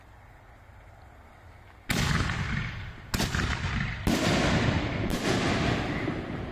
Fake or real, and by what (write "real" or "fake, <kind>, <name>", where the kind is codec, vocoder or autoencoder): real